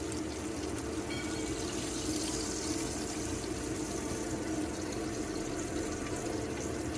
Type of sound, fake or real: real